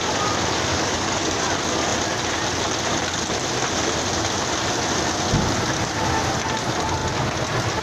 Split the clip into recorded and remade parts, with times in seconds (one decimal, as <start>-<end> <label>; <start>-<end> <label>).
0.0-0.7 recorded; 0.7-1.4 remade; 1.4-7.8 recorded